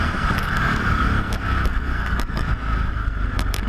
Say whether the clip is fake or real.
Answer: fake